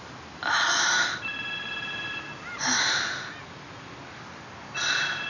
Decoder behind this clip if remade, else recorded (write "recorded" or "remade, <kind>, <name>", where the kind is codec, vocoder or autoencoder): recorded